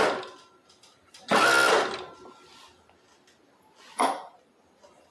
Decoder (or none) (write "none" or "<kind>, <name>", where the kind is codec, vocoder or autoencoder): none